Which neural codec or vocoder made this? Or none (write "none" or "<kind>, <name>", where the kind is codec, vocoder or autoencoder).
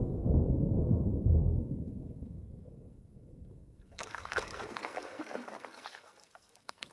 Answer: codec, SNAC